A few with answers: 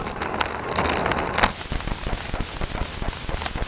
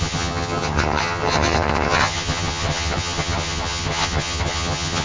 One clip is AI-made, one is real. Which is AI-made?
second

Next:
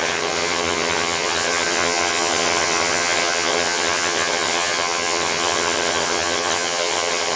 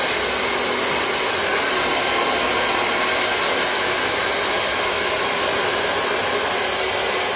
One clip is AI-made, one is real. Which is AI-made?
first